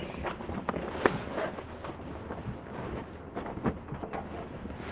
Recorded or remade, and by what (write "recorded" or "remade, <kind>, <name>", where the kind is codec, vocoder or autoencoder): recorded